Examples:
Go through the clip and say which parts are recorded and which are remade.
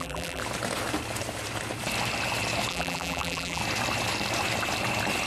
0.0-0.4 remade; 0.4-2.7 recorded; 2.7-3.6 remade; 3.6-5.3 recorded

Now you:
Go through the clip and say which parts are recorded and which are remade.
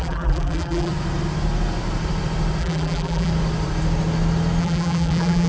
0.0-0.9 remade; 0.9-2.6 recorded; 2.6-3.3 remade; 3.3-4.6 recorded; 4.6-5.5 remade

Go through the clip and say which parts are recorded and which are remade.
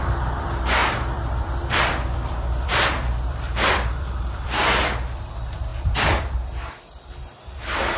0.0-0.8 recorded; 0.8-5.3 remade; 5.3-8.0 recorded